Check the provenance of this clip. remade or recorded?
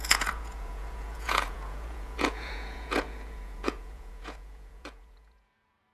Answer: remade